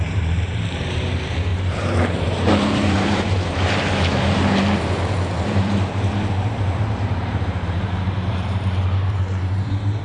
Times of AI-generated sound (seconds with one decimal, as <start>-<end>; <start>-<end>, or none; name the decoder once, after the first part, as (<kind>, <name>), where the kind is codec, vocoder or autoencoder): 0.0-10.0 (vocoder, BigVGAN v2)